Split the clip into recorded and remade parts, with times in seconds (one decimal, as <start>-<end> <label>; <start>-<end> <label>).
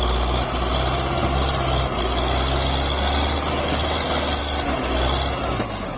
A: 0.0-6.0 recorded